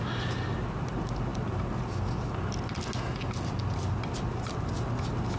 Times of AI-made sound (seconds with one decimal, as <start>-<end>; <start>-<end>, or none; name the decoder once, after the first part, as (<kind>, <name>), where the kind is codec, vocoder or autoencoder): none